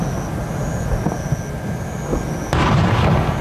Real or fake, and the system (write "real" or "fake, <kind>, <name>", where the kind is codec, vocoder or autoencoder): real